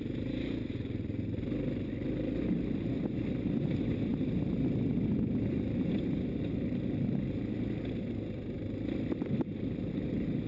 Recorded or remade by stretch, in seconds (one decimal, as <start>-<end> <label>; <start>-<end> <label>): 0.0-10.5 recorded